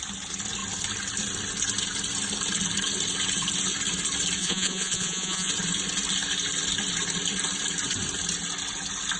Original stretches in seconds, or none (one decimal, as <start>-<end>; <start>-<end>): 0.0-4.4; 5.5-9.2